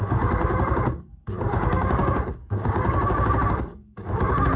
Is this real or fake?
fake